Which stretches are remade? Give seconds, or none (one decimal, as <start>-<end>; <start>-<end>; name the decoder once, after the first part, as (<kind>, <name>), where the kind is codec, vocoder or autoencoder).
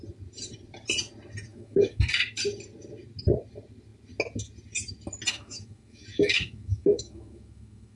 1.5-2.0 (autoencoder, DAC-VAE); 5.3-8.0